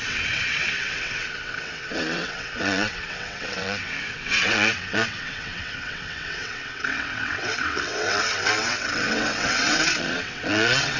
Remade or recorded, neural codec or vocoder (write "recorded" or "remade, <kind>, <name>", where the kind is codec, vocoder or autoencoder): remade, vocoder, WaveNeXt